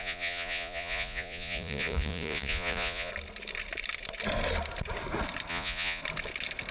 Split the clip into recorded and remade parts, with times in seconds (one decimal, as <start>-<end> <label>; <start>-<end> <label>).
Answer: 0.0-3.1 remade; 3.1-5.5 recorded; 5.5-6.0 remade; 6.0-6.7 recorded